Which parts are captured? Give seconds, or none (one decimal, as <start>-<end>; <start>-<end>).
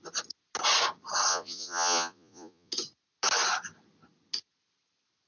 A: 0.0-1.3; 2.7-5.3